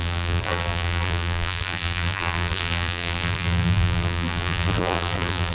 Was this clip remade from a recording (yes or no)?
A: yes